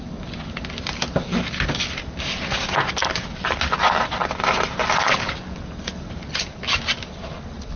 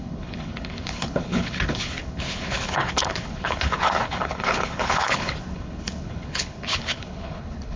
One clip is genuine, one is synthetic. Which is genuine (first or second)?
first